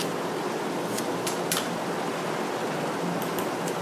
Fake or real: real